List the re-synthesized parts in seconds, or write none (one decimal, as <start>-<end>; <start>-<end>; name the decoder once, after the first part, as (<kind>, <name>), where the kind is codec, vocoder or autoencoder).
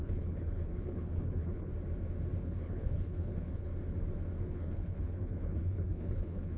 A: 0.0-1.7 (codec, HILCodec); 2.4-3.7; 4.5-6.6